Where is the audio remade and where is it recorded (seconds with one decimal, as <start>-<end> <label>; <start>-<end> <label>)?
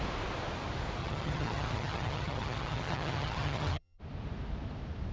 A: 0.0-1.0 recorded; 1.0-4.0 remade; 4.0-5.1 recorded